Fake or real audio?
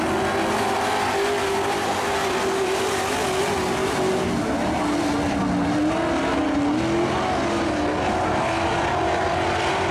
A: real